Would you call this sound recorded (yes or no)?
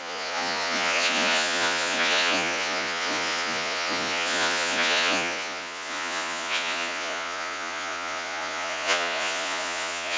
no